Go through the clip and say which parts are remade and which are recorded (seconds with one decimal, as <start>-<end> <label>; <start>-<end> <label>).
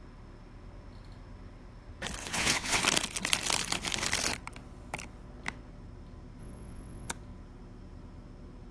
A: 0.0-2.2 recorded; 2.2-2.8 remade; 2.8-6.4 recorded; 6.4-7.1 remade; 7.1-8.7 recorded